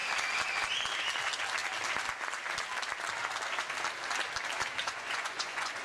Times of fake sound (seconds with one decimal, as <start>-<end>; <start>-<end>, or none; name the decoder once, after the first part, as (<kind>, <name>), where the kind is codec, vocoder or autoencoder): 4.8-5.8 (vocoder, Vocos)